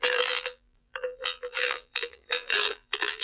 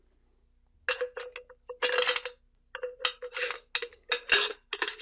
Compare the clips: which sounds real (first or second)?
second